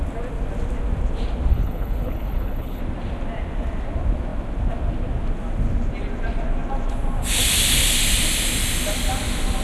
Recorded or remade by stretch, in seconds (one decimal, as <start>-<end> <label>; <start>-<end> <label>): 0.0-1.5 recorded; 1.5-2.8 remade; 2.8-9.6 recorded